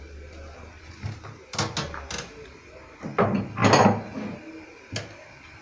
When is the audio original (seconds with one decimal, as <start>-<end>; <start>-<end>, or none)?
0.0-5.6